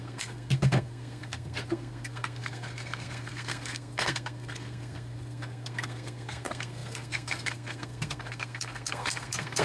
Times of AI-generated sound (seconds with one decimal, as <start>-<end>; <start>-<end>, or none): 0.0-9.6